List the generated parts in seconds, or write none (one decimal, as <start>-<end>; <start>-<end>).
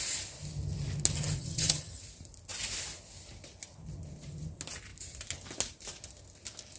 1.4-2.0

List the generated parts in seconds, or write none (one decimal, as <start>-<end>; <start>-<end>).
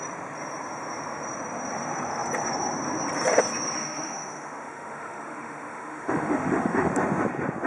3.8-6.9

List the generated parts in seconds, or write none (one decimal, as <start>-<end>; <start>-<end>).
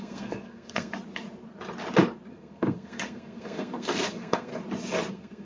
0.0-0.9; 2.3-4.5; 5.1-5.5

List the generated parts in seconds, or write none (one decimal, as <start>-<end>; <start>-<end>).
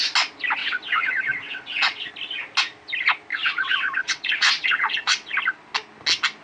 0.6-2.1; 3.3-5.3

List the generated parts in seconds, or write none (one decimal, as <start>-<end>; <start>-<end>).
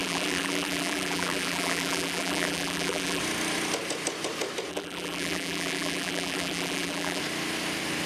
0.0-3.2; 4.7-7.2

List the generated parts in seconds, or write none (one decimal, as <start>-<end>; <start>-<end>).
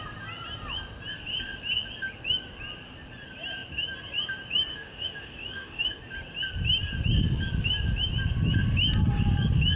4.7-6.0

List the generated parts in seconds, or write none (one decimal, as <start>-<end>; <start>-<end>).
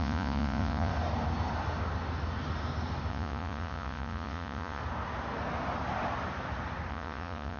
0.0-0.9; 3.1-4.8; 6.9-7.6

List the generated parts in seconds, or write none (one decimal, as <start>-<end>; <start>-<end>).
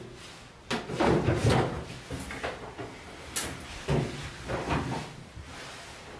none